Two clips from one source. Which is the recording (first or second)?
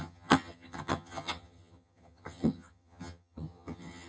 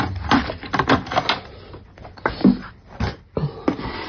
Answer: second